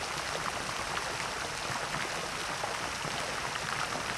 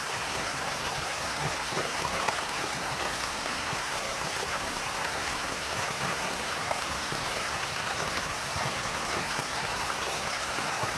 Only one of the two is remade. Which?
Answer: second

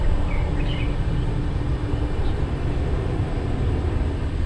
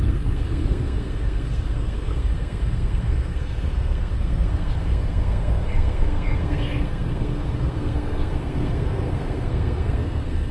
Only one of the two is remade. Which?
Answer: second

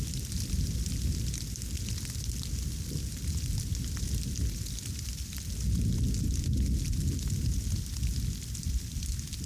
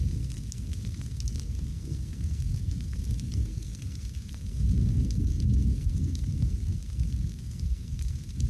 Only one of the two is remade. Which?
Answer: second